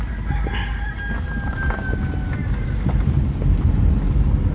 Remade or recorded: recorded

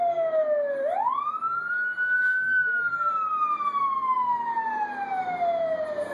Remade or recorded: recorded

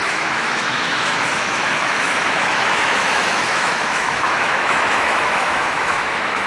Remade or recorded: remade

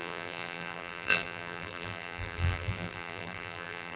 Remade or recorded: remade